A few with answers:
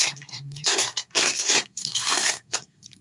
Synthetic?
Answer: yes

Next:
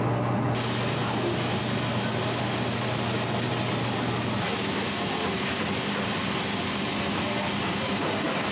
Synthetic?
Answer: no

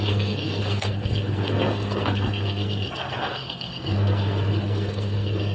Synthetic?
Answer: yes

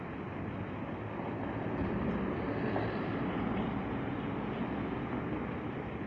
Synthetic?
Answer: no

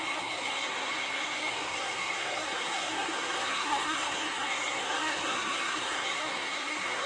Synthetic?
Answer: yes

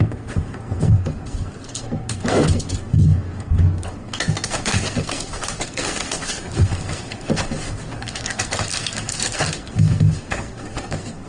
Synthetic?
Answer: yes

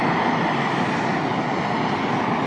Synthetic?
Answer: no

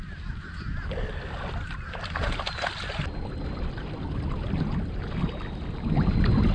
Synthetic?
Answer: no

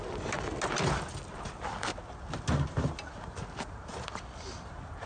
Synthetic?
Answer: no